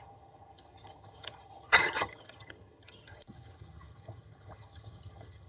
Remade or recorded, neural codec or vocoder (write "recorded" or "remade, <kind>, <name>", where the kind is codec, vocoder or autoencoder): remade, vocoder, HiFi-GAN